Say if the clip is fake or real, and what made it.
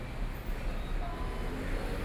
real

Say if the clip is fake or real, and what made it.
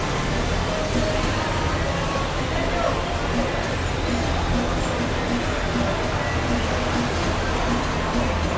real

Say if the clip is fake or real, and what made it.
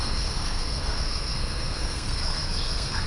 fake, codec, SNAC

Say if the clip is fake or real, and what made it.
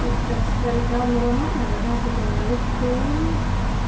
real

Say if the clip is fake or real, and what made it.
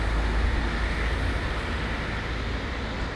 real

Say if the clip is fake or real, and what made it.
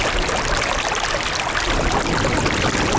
real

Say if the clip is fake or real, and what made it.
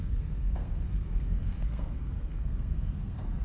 fake, codec, SNAC